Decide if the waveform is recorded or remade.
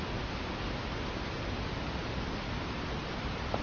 recorded